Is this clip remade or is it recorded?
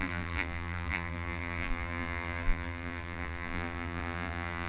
remade